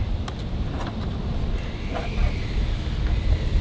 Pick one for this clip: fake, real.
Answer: real